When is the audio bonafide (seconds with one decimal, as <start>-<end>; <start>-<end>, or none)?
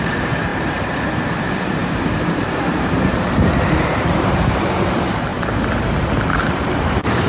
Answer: none